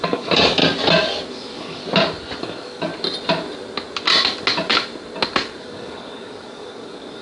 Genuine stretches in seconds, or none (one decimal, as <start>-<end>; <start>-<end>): 0.6-1.3; 1.8-2.4; 2.9-5.6

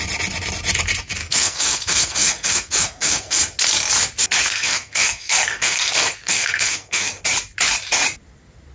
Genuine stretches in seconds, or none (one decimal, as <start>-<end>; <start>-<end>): 0.0-1.2; 3.4-4.4; 7.2-8.7